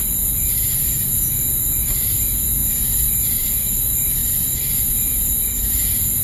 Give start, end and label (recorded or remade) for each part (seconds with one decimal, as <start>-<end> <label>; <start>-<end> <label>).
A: 0.0-6.2 remade